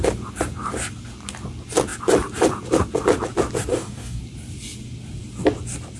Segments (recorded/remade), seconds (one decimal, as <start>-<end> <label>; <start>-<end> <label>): 0.0-3.7 recorded; 3.7-4.2 remade; 4.2-6.0 recorded